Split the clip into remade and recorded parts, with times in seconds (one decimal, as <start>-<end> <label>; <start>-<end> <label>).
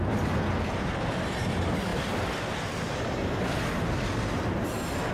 0.0-5.1 recorded